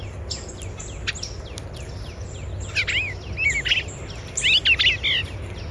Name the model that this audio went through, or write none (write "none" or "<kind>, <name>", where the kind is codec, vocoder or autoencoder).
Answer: none